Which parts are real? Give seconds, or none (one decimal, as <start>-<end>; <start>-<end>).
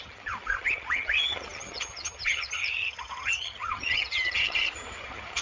none